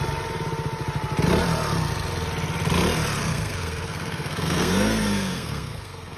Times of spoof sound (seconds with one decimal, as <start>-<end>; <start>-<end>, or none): 3.2-6.2